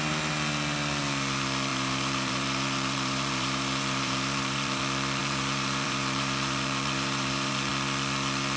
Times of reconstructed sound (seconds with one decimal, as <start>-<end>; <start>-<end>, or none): 1.7-4.8; 5.2-7.7